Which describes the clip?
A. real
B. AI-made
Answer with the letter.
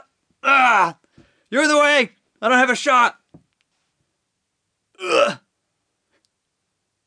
A